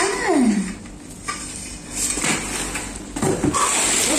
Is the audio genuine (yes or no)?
yes